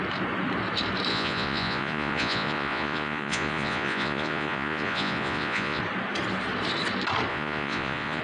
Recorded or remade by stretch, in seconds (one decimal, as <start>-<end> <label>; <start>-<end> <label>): 0.0-1.1 recorded; 1.1-5.8 remade; 5.8-7.3 recorded; 7.3-8.2 remade